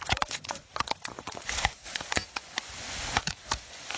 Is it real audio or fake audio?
fake